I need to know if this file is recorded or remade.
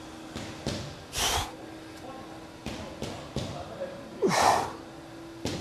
recorded